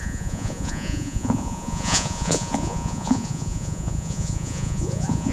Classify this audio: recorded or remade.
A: remade